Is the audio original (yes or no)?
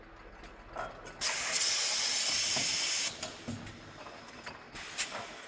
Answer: yes